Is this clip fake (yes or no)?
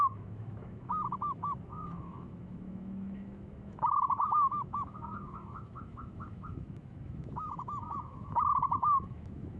yes